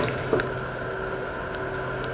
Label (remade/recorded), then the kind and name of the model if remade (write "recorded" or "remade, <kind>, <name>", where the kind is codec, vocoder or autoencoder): recorded